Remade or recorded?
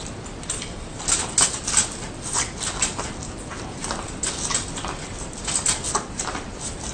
recorded